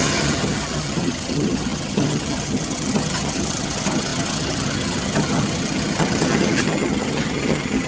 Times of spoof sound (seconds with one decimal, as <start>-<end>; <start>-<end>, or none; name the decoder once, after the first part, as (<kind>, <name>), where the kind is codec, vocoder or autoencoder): 0.0-7.9 (vocoder, HiFi-GAN)